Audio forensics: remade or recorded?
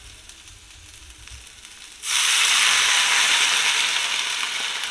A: recorded